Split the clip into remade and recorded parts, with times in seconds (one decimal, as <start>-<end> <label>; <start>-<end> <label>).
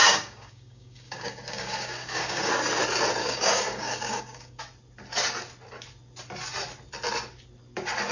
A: 0.0-2.5 remade; 2.5-3.2 recorded; 3.2-4.6 remade; 4.6-8.1 recorded